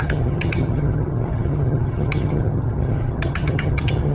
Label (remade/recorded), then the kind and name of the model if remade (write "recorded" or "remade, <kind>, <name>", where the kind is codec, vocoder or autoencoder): remade, vocoder, HiFi-GAN